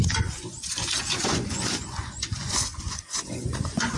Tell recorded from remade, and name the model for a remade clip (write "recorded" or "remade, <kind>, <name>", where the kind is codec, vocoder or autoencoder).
remade, vocoder, Vocos